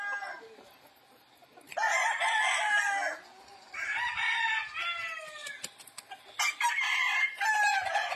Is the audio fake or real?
real